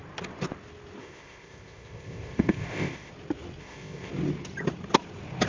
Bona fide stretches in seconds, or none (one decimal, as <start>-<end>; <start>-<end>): 0.0-1.0; 3.1-3.6; 4.1-5.5